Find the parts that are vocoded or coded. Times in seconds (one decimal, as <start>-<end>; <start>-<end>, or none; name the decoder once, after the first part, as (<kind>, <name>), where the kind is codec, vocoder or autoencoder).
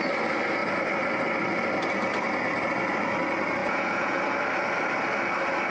3.6-4.2 (vocoder, Vocos)